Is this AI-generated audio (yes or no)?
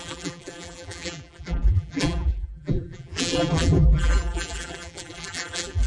yes